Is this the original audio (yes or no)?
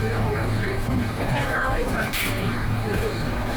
no